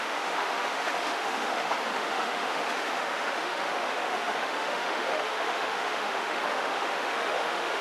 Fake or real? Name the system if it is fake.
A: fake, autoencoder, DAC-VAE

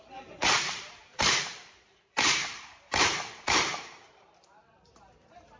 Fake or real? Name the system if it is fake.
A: fake, vocoder, BigVGAN v2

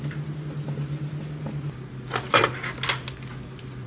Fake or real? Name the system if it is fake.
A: real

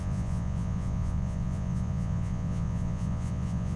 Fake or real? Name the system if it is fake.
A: fake, vocoder, Vocos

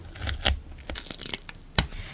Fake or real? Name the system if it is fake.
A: real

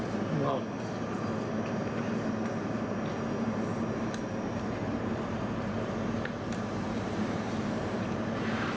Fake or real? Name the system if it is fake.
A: fake, vocoder, BigVGAN v2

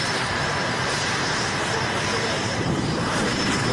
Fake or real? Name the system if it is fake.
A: fake, vocoder, BigVGAN v2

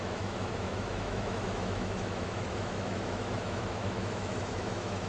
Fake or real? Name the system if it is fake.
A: fake, autoencoder, DAC-VAE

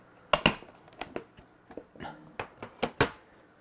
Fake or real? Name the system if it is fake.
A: real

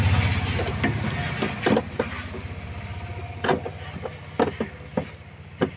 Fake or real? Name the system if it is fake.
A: real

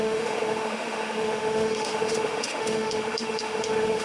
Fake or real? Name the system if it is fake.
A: fake, autoencoder, DAC-VAE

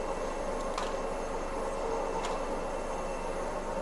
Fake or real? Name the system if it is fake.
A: real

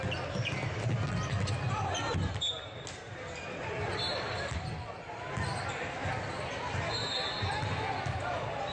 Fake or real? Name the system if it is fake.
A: real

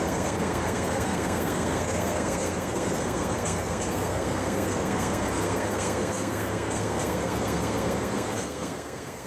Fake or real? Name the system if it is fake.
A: fake, codec, SNAC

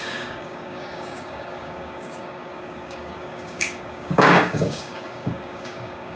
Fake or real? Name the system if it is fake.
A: fake, codec, DAC